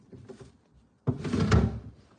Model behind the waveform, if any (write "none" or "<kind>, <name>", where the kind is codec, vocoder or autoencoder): none